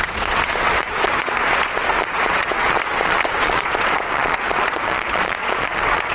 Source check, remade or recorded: remade